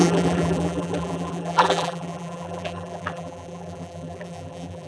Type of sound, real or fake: fake